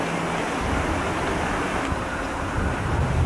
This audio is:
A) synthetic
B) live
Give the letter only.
B